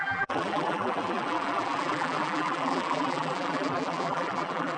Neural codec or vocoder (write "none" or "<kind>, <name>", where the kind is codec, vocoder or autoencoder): vocoder, BigVGAN v2